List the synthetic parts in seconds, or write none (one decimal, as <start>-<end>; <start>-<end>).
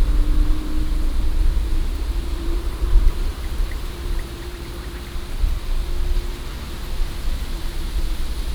1.4-5.0